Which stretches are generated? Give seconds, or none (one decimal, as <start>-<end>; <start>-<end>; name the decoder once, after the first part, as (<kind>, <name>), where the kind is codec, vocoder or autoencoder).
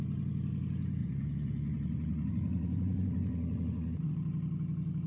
1.0-4.1 (vocoder, Vocos)